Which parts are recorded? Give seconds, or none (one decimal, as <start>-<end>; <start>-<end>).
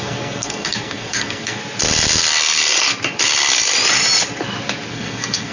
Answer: 1.6-4.9